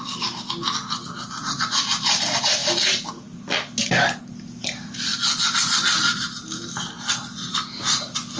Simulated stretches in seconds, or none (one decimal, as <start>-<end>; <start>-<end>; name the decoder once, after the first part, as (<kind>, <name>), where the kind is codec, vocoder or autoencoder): none